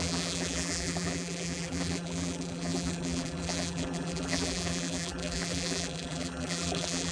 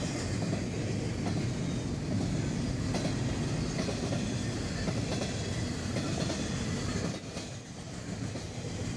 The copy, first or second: first